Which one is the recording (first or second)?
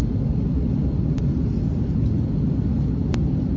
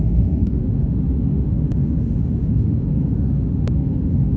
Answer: first